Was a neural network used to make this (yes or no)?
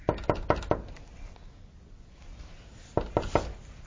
no